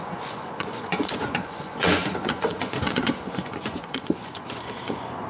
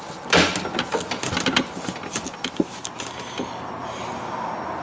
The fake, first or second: first